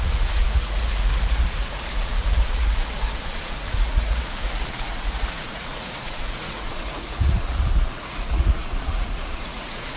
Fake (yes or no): yes